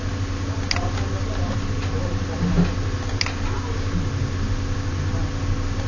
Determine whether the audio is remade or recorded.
recorded